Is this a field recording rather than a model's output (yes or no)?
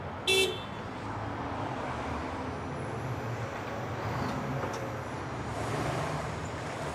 yes